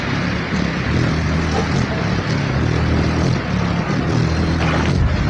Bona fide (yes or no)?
yes